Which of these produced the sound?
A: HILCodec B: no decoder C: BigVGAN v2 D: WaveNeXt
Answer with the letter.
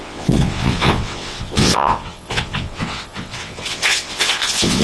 D